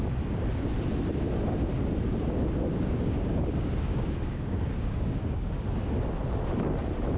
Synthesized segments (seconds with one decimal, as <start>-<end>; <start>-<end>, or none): 2.7-5.7